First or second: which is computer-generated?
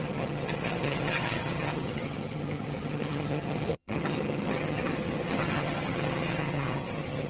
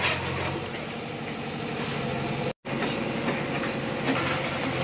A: first